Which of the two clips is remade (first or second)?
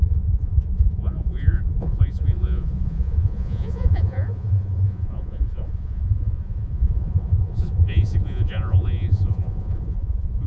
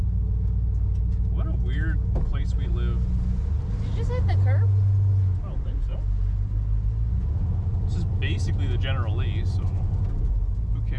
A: first